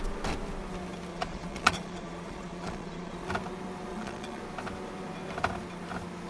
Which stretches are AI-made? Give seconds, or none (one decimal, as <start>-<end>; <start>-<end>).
1.1-3.3; 3.9-4.4

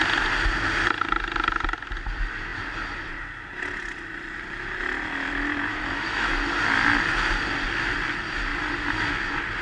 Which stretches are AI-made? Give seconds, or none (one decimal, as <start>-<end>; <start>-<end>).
5.7-6.3

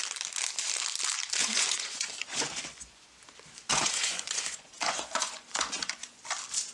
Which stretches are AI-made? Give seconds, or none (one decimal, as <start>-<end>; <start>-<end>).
1.4-3.2; 3.7-6.2